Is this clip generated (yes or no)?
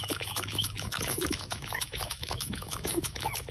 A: yes